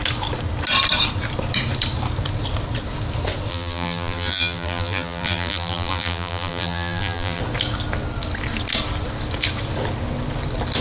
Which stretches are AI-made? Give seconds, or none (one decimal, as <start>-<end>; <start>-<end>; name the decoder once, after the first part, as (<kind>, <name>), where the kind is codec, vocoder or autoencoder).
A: 3.5-7.4 (vocoder, BigVGAN v2)